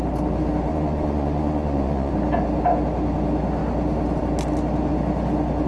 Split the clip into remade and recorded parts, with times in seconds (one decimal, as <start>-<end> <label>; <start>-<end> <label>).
0.0-0.7 recorded; 0.7-2.1 remade; 2.1-5.7 recorded